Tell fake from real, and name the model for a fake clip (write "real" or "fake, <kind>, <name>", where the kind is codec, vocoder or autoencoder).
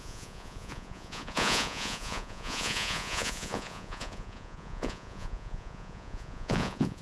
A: fake, vocoder, Vocos